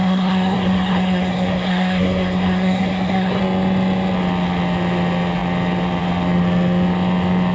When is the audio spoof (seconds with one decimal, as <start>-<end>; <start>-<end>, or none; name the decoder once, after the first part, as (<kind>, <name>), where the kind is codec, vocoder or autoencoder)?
0.0-3.4 (codec, SNAC)